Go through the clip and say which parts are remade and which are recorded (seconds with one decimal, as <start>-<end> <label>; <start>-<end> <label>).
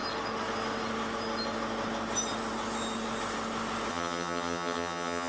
0.0-3.9 recorded; 3.9-5.3 remade